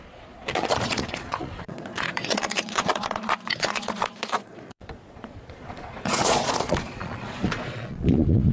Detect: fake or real fake